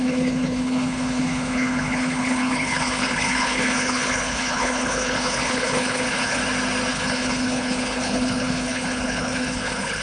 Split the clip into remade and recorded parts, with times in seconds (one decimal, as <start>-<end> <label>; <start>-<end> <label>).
0.0-6.4 remade; 6.4-6.9 recorded; 6.9-10.0 remade